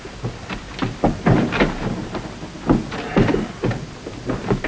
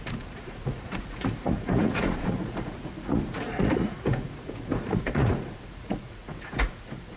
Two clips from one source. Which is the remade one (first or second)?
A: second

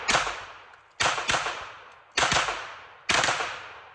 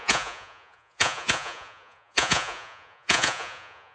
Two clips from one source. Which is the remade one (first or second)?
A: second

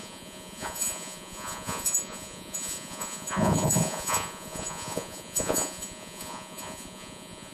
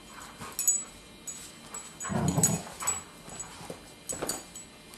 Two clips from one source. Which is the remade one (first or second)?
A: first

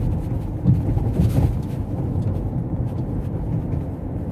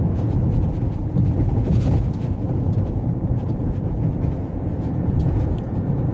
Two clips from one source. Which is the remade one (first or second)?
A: second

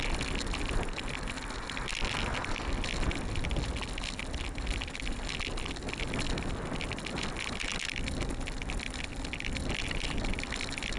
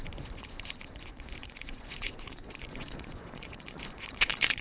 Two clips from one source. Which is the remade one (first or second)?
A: second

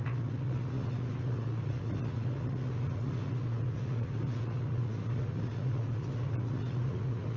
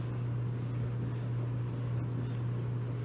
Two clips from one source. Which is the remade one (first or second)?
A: first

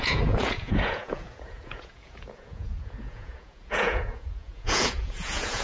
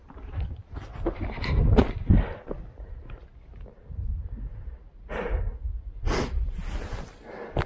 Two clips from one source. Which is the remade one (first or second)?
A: first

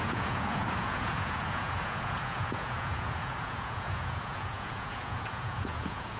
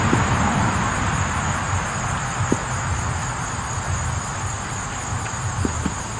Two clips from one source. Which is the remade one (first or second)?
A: first